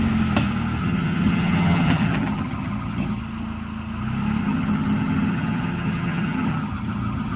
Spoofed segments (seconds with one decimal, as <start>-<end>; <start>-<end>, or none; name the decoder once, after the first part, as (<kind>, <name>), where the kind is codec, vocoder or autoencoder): 0.8-3.2 (vocoder, HiFi-GAN); 4.4-7.4